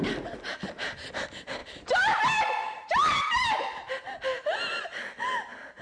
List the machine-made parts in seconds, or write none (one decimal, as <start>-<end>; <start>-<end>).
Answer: 0.5-1.0; 1.6-2.2; 3.0-3.9